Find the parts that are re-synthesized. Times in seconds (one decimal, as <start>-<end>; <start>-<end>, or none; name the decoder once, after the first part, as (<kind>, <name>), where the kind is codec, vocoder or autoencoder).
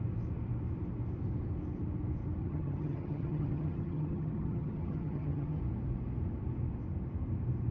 2.4-5.6 (vocoder, HiFi-GAN)